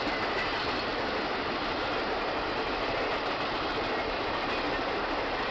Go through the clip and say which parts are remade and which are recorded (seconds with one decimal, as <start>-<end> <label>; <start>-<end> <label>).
0.0-5.5 recorded

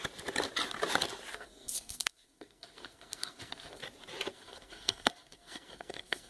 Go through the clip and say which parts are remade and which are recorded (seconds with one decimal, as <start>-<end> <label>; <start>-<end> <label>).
0.0-1.3 recorded; 1.3-3.8 remade; 3.8-4.3 recorded; 4.3-6.3 remade

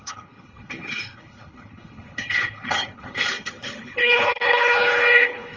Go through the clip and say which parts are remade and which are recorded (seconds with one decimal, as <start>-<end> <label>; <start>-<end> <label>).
0.0-5.6 remade

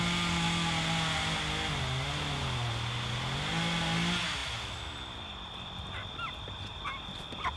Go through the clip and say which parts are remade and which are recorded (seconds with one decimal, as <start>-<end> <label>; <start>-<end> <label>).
0.0-7.6 recorded

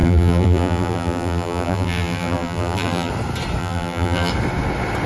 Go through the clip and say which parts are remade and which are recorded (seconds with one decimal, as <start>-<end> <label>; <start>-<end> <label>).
0.0-3.1 remade; 3.1-3.6 recorded; 3.6-4.3 remade; 4.3-5.1 recorded

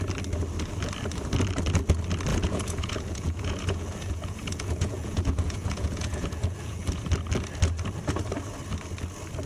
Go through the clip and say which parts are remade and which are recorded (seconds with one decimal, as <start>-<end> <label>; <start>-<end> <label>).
0.0-2.3 recorded; 2.3-7.0 remade; 7.0-9.5 recorded